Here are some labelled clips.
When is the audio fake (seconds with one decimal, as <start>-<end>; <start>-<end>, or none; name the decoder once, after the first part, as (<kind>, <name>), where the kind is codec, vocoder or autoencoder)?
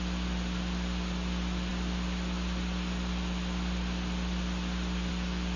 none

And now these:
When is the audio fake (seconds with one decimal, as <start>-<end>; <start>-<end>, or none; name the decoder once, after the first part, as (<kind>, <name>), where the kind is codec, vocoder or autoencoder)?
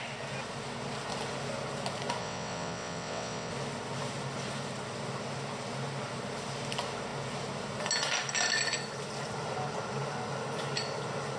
2.2-3.5 (vocoder, WaveNeXt)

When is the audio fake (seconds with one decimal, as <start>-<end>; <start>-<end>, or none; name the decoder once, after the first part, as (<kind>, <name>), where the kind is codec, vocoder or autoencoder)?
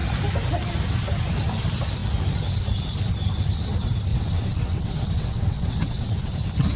4.1-6.3 (vocoder, WaveNeXt)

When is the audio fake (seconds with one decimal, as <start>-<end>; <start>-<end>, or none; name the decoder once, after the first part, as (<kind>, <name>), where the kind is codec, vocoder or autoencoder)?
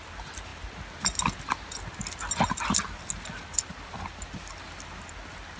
none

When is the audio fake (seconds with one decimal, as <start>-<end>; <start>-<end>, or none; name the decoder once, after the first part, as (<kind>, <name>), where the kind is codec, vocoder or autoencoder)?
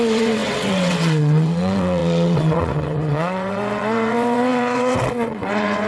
0.0-5.9 (vocoder, WaveNeXt)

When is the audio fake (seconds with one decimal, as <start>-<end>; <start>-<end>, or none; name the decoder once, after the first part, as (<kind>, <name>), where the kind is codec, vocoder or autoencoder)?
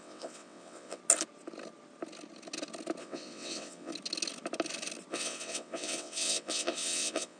0.0-1.0 (vocoder, WaveNeXt); 3.0-3.9; 5.1-7.4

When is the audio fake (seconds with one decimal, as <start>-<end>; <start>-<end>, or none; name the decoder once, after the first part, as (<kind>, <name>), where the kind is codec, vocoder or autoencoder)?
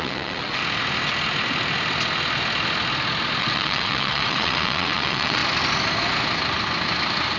0.0-0.6 (vocoder, WaveNeXt); 3.4-5.4